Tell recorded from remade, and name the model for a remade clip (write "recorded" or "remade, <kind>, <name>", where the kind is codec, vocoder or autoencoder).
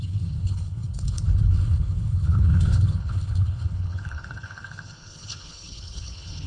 remade, codec, HILCodec